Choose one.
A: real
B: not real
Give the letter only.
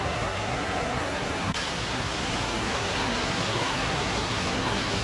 B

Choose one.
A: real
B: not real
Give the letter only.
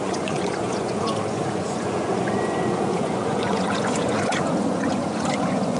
B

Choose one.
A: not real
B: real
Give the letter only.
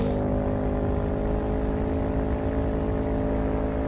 B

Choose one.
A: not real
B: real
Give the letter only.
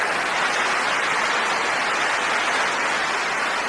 B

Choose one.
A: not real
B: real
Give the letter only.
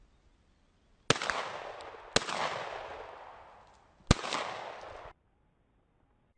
B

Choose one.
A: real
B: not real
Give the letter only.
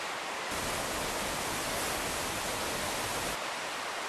A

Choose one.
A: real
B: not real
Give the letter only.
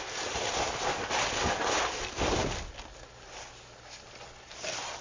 A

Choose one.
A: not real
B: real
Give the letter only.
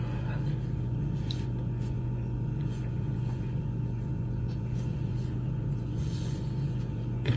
A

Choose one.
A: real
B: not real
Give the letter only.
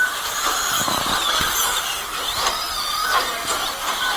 A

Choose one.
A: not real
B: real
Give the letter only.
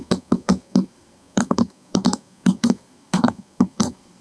A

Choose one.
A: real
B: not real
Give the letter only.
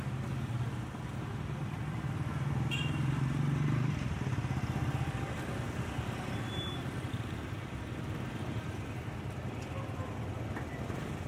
B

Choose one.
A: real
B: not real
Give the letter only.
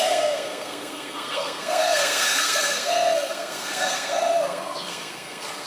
B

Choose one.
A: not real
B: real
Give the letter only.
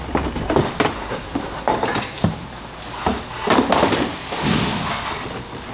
B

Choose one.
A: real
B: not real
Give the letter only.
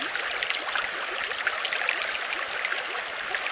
A